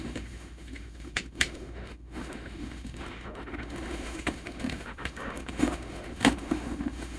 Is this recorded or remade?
remade